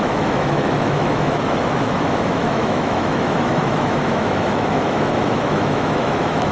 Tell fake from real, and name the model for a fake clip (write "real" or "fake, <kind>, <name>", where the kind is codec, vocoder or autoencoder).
fake, autoencoder, DAC-VAE